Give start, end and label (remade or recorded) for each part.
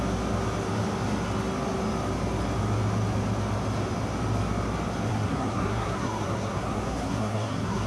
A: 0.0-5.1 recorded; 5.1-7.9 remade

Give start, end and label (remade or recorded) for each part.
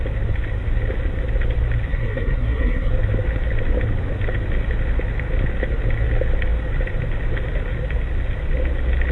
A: 0.0-1.9 recorded; 1.9-2.9 remade; 2.9-9.1 recorded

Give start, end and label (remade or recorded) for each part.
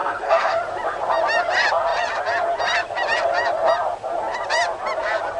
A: 0.0-0.6 remade; 0.6-5.4 recorded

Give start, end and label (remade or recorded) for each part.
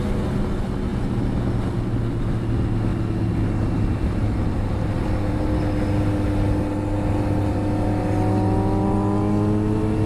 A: 0.0-10.1 recorded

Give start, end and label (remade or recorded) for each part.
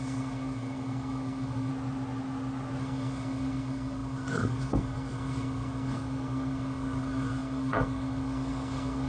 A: 0.0-1.7 remade; 1.7-2.8 recorded; 2.8-9.1 remade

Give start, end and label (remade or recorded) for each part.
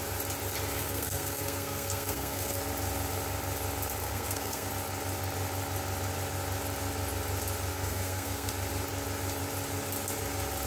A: 0.0-0.8 recorded; 0.8-2.6 remade; 2.6-4.0 recorded; 4.0-4.7 remade; 4.7-7.7 recorded; 7.7-8.5 remade; 8.5-10.7 recorded